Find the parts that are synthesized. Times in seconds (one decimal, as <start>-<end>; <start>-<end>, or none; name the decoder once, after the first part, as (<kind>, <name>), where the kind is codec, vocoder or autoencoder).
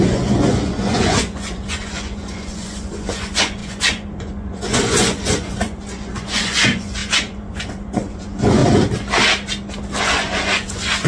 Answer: 0.0-8.6 (vocoder, Vocos); 10.0-11.1